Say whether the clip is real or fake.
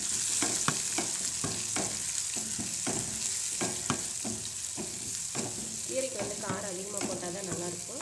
real